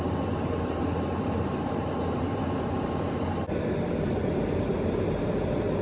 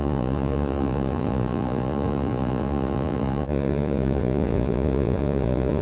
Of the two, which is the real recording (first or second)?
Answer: first